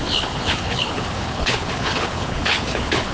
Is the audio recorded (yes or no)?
no